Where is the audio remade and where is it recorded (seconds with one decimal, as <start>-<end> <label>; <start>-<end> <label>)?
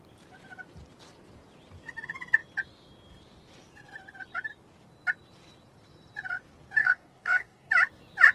0.0-6.8 recorded; 6.8-7.7 remade; 7.7-8.3 recorded